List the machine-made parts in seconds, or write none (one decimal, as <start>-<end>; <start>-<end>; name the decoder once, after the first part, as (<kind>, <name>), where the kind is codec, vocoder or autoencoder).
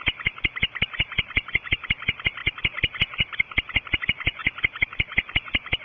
none